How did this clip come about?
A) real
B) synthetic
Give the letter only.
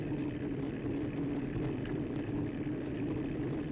A